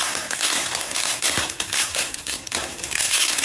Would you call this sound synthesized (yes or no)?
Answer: yes